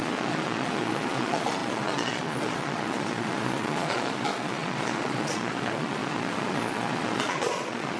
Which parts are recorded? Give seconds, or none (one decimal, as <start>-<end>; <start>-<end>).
none